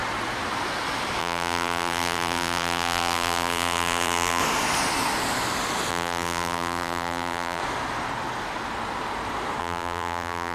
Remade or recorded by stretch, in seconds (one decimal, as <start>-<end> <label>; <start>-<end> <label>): 0.0-1.2 recorded; 1.2-4.4 remade; 4.4-5.9 recorded; 5.9-7.6 remade; 7.6-9.6 recorded; 9.6-10.5 remade

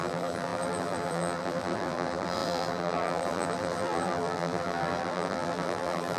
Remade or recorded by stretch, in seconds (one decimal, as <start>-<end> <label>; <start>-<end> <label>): 0.0-6.2 remade

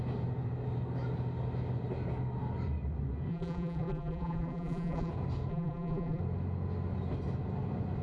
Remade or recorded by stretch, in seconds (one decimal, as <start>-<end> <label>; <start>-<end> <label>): 0.0-3.3 recorded; 3.3-5.1 remade; 5.1-5.5 recorded; 5.5-6.2 remade; 6.2-8.0 recorded

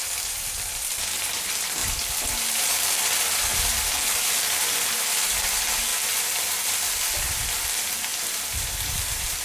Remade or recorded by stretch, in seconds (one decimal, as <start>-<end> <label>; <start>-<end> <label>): 0.0-1.8 recorded; 1.8-3.7 remade; 3.7-8.1 recorded; 8.1-9.4 remade

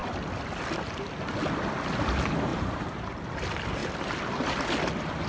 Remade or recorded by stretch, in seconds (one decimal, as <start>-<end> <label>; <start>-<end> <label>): 0.0-2.5 recorded; 2.5-3.2 remade; 3.2-5.3 recorded